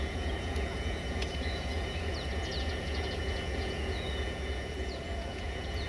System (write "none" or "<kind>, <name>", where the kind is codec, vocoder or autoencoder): vocoder, Vocos